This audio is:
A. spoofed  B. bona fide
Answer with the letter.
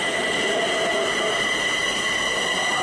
B